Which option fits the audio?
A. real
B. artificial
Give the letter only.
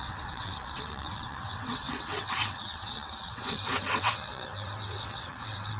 B